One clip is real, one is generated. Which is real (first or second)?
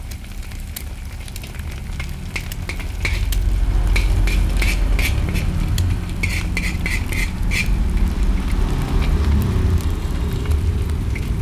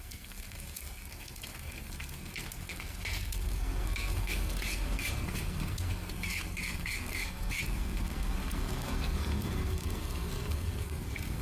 first